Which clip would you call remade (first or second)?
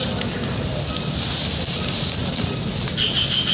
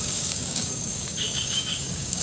second